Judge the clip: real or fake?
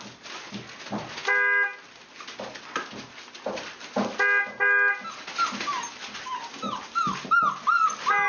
real